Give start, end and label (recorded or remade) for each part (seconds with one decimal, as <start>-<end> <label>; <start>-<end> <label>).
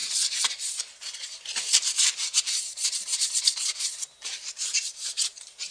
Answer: 0.0-5.7 remade